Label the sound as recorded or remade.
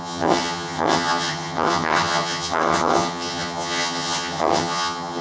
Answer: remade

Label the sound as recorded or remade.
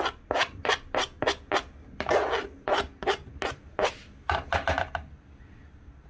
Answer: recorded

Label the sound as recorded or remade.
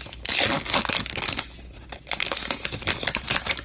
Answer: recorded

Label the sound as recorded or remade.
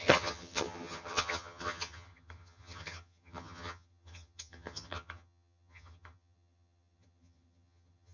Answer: remade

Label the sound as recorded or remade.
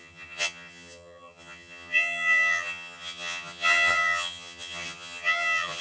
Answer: remade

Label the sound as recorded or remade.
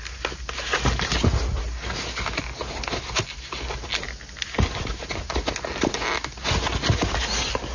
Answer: recorded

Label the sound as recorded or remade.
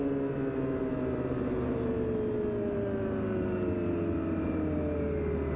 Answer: recorded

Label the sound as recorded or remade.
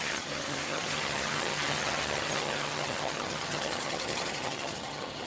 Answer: remade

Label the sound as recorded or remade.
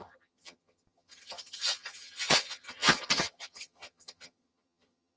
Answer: remade